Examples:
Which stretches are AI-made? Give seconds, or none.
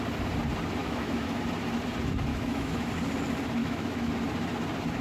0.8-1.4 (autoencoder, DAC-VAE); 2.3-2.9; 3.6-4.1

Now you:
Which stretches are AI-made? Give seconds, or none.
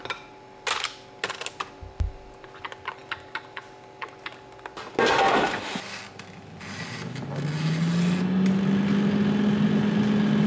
none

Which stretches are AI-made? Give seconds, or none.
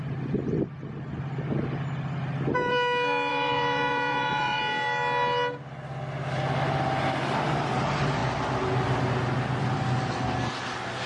3.3-4.6 (vocoder, Vocos)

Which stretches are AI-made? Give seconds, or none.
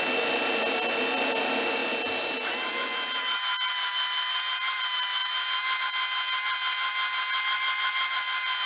none